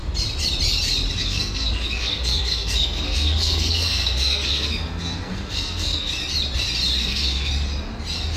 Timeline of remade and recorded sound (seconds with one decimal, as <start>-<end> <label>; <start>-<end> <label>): 0.0-1.2 recorded; 1.2-6.1 remade; 6.1-7.0 recorded; 7.0-7.5 remade; 7.5-8.4 recorded